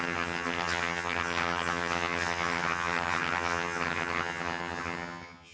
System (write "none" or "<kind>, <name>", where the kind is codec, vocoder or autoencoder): vocoder, HiFi-GAN